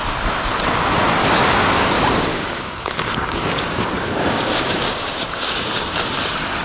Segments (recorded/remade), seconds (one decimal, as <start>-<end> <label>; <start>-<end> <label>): 0.0-1.2 recorded; 1.2-1.7 remade; 1.7-2.3 recorded; 2.3-6.0 remade; 6.0-6.6 recorded